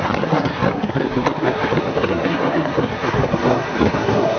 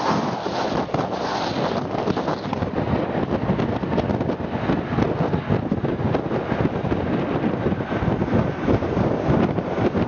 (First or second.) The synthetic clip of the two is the first